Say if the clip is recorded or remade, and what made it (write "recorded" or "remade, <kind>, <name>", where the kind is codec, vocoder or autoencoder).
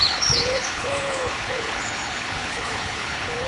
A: remade, codec, HILCodec